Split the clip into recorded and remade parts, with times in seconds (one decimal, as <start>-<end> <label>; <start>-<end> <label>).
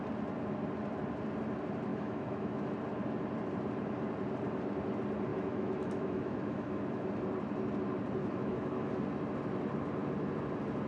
0.0-1.9 recorded; 1.9-2.7 remade; 2.7-5.3 recorded; 5.3-7.1 remade; 7.1-8.2 recorded; 8.2-9.0 remade; 9.0-10.9 recorded